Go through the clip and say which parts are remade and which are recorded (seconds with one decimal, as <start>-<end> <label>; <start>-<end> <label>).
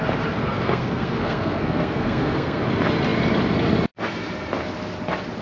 0.0-0.4 recorded; 0.4-2.6 remade; 2.6-5.4 recorded